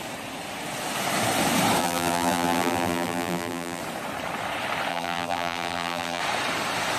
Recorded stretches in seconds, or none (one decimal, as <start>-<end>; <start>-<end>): 0.0-1.8; 3.8-4.9; 6.2-7.0